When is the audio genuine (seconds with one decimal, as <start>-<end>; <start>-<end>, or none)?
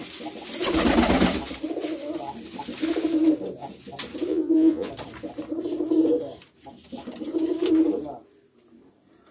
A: 0.0-4.3; 4.9-9.3